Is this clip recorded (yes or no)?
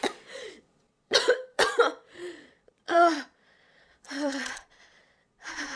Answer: no